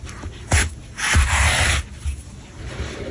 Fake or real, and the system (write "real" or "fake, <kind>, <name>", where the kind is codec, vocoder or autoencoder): real